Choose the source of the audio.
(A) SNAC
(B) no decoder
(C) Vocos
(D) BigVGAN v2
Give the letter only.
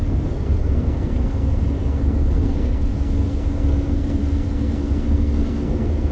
A